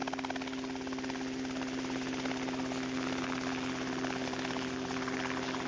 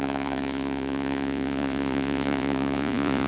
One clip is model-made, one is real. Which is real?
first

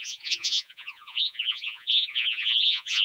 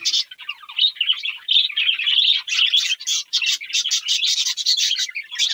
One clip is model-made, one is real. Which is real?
second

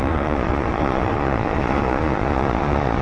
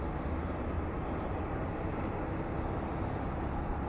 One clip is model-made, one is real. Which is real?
second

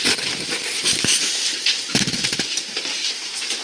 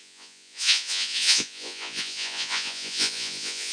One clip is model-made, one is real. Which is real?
first